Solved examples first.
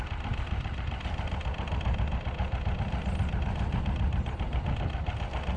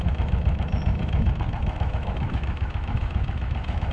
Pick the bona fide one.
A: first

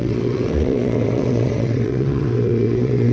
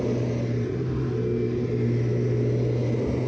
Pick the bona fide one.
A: second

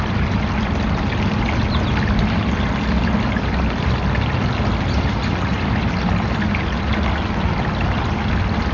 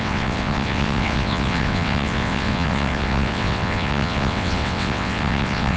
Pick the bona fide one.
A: first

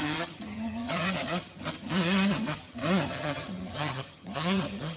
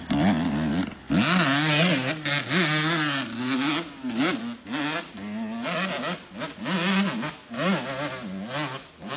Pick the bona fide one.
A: second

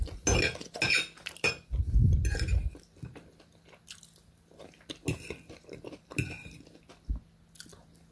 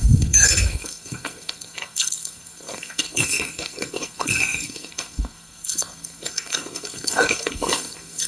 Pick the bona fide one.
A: first